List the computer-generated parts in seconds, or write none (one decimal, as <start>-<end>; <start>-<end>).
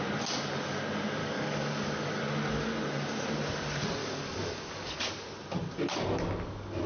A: 1.2-2.2; 4.0-5.0